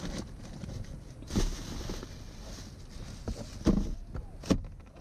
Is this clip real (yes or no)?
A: yes